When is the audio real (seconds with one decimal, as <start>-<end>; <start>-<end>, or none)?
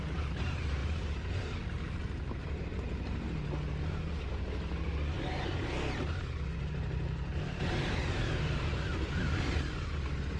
0.8-1.3; 2.7-6.7; 8.7-9.9